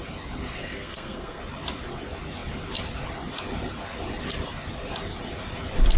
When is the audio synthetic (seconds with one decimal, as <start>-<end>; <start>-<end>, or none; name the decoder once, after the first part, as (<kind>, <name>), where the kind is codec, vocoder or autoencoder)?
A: 0.6-1.4 (codec, SNAC)